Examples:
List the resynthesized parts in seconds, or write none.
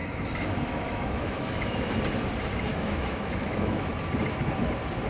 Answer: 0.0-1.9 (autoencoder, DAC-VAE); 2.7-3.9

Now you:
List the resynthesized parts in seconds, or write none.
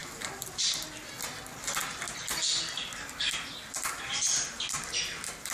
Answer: none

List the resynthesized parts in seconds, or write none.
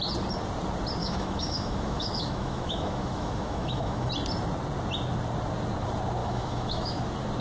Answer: 1.0-4.1 (autoencoder, DAC-VAE); 6.2-7.0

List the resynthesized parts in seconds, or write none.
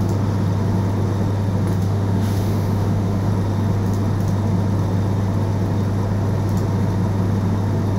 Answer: 1.8-3.3 (autoencoder, DAC-VAE)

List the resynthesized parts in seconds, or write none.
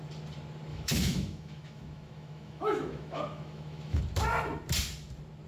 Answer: 0.7-4.0 (autoencoder, DAC-VAE)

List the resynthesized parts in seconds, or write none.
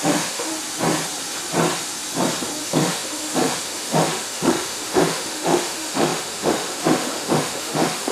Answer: 0.0-0.5 (autoencoder, DAC-VAE); 2.6-8.1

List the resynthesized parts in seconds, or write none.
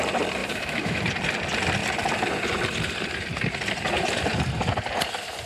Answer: 0.4-1.0 (autoencoder, DAC-VAE)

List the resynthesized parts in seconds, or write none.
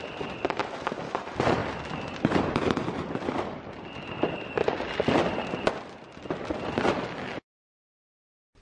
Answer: none